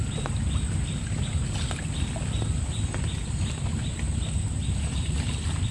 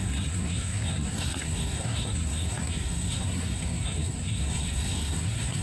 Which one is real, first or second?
first